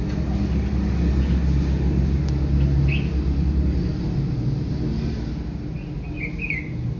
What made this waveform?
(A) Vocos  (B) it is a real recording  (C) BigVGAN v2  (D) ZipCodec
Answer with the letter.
B